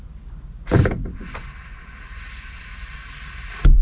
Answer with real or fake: real